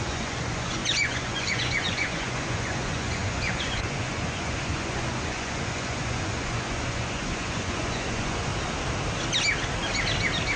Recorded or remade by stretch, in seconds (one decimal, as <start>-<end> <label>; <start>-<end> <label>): 0.0-8.5 remade; 8.5-10.6 recorded